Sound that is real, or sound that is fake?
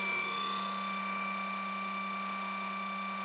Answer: fake